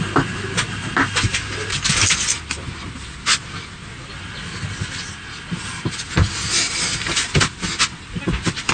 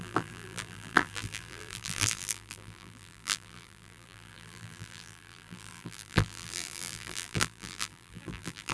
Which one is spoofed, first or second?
second